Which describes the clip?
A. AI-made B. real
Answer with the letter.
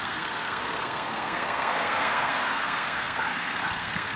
A